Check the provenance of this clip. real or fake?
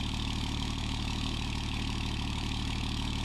fake